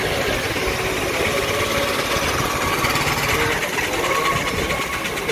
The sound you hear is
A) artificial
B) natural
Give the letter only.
B